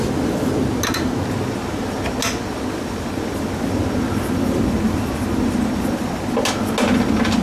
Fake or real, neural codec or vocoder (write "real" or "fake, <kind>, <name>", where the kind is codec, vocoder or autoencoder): real